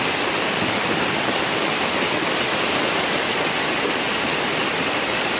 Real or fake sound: real